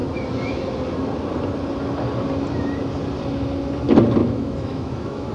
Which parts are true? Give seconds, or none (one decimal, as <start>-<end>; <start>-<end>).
0.0-4.2